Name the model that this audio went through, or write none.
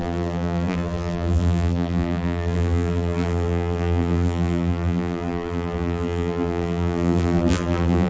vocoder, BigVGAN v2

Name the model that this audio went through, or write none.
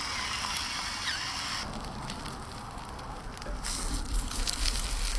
vocoder, BigVGAN v2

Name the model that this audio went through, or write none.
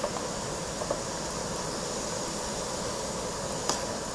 none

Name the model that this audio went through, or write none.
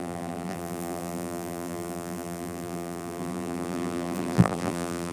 vocoder, BigVGAN v2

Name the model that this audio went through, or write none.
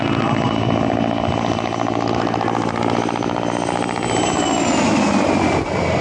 none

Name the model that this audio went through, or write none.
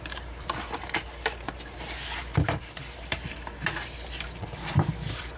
vocoder, BigVGAN v2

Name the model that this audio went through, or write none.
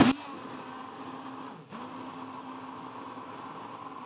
none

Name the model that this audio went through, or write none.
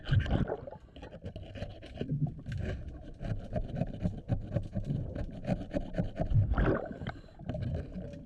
none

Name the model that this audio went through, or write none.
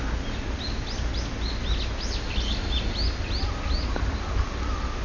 none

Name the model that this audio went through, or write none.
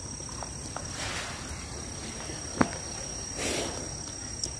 none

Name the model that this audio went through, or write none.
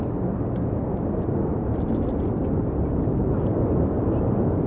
none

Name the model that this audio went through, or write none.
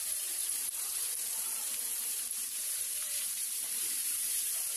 vocoder, BigVGAN v2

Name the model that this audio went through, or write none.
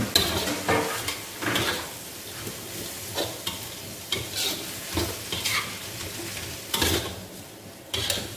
none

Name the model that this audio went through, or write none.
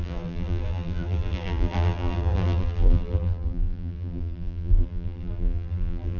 vocoder, BigVGAN v2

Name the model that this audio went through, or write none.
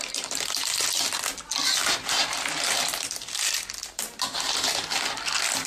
none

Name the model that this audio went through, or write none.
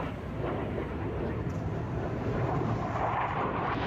none